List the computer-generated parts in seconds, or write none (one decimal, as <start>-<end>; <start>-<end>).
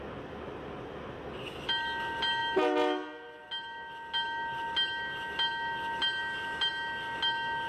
none